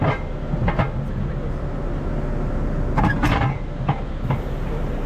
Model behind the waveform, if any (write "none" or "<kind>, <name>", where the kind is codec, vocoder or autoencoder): none